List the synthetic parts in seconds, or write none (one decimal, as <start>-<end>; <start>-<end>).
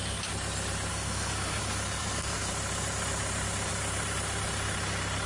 0.9-1.6; 2.0-2.5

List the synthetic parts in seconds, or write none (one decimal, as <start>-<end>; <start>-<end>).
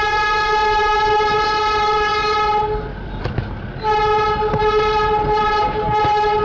none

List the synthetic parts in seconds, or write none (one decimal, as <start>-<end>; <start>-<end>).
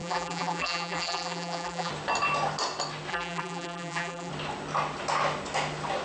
0.0-1.9; 3.1-4.3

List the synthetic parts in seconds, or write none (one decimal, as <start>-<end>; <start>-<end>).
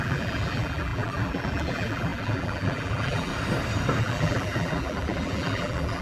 0.0-3.3; 4.0-6.0